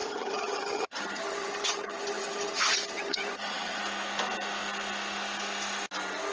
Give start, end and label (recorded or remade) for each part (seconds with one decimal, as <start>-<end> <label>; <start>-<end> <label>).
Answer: 0.0-3.8 remade; 3.8-6.3 recorded